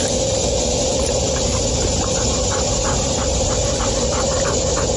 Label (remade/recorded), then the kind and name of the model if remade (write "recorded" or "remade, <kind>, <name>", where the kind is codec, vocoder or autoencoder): recorded